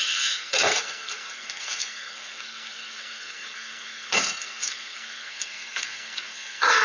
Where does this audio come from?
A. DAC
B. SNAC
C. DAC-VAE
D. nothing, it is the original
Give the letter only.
B